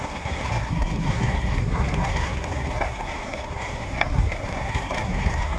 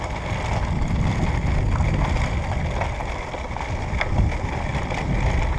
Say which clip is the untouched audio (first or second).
second